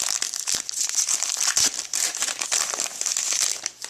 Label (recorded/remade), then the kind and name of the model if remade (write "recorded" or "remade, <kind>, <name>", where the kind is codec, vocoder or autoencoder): recorded